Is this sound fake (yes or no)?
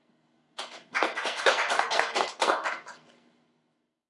yes